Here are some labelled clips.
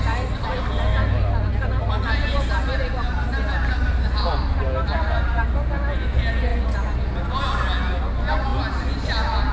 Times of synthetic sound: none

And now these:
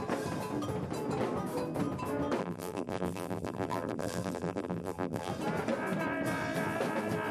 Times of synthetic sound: 2.4-5.3 (vocoder, BigVGAN v2)

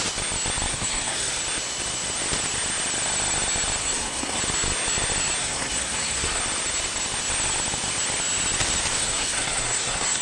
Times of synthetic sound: 0.7-1.4 (codec, SNAC); 3.8-4.4; 5.4-6.4; 8.9-10.2

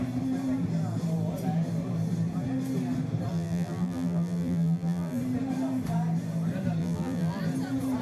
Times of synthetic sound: 3.3-5.2 (vocoder, BigVGAN v2); 6.8-7.4

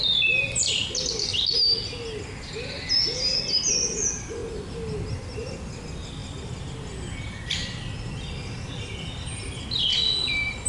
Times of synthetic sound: 9.9-10.7 (vocoder, BigVGAN v2)

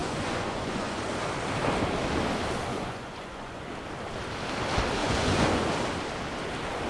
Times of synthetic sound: 0.0-1.0 (vocoder, Vocos); 2.7-3.7; 5.0-5.7

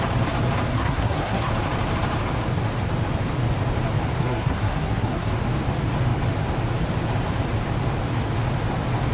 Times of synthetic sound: 0.7-1.5 (codec, SNAC); 4.2-5.3